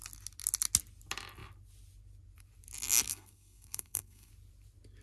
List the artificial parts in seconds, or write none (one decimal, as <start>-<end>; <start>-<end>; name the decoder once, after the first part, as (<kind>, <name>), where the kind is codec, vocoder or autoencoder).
3.1-4.3 (codec, SNAC)